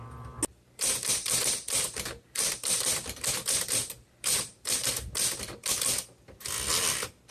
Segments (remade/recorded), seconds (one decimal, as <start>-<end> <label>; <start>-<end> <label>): 0.0-0.5 recorded; 0.5-4.9 remade; 4.9-7.3 recorded